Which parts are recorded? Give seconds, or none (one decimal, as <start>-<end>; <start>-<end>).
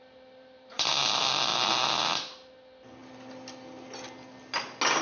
0.9-1.5; 2.5-5.0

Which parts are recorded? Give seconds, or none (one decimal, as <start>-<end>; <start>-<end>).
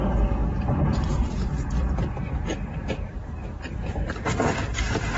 0.0-0.4; 1.9-2.5; 4.1-5.2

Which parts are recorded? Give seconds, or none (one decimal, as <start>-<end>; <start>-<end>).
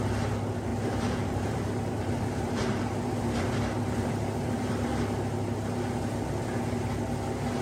0.0-0.7; 4.7-7.6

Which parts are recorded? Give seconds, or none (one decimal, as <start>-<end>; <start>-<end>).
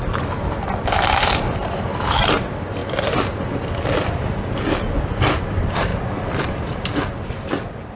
2.8-5.3; 5.9-6.4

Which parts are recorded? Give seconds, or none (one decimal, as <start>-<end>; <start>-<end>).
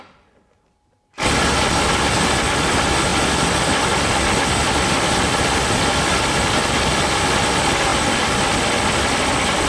0.0-7.9; 8.9-9.7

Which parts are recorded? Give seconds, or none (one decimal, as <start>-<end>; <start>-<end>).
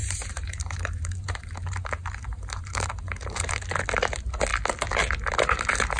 3.6-6.0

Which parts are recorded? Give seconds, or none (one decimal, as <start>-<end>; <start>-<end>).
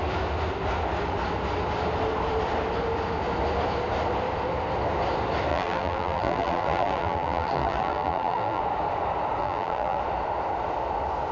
0.0-5.5; 8.6-9.4; 10.0-11.3